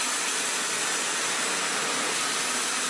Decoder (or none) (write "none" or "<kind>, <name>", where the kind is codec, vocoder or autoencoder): none